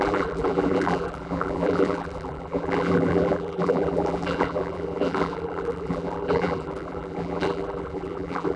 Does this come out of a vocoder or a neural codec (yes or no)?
yes